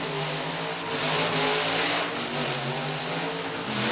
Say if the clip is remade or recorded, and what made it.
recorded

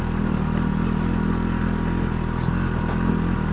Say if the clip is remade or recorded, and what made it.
recorded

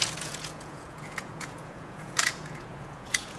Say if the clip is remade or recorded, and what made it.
remade, vocoder, Vocos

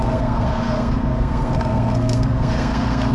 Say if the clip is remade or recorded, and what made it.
remade, codec, SNAC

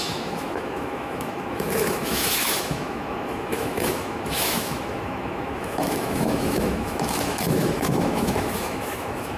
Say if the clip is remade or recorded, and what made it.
remade, autoencoder, DAC-VAE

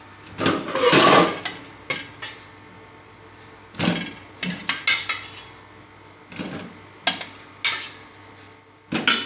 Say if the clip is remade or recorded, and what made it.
recorded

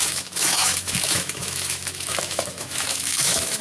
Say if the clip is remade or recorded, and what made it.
remade, autoencoder, DAC-VAE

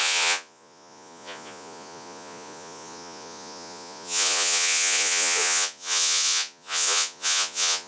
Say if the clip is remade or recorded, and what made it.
remade, vocoder, Vocos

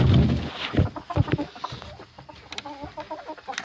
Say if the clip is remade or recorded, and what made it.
recorded